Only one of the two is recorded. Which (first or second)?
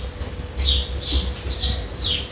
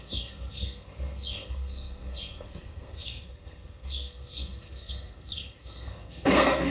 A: first